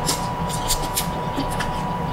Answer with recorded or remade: recorded